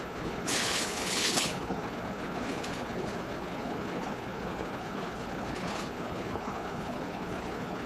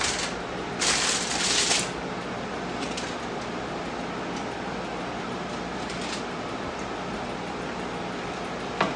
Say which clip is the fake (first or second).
first